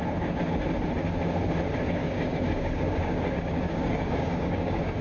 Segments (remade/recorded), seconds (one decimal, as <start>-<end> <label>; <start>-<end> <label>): 0.0-2.0 recorded; 2.0-5.0 remade